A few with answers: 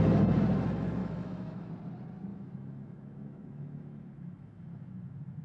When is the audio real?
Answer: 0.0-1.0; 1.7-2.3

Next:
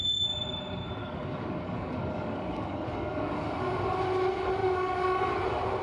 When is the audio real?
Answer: 0.0-1.0; 3.6-4.6; 5.3-5.8

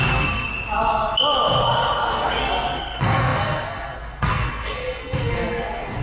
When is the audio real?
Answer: 0.5-2.4

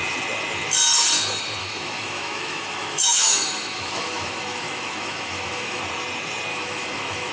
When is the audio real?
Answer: 0.0-1.6; 5.8-6.5

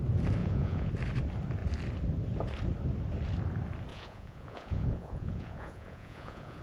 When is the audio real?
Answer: 0.0-0.4; 0.9-3.9

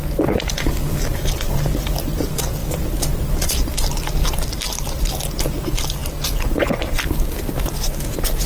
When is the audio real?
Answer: 0.0-2.6; 5.1-8.5

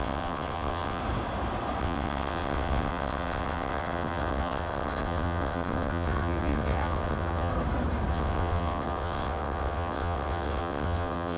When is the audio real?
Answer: 1.0-1.8; 7.5-8.1